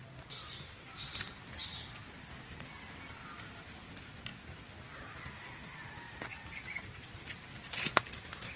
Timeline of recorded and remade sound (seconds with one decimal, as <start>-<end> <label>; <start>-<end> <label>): 0.0-8.6 recorded